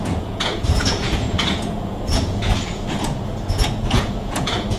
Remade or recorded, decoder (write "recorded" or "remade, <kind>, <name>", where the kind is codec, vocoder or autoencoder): remade, vocoder, Vocos